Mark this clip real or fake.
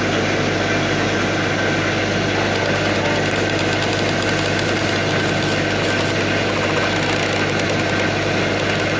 real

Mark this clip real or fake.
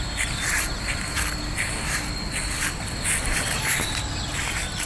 real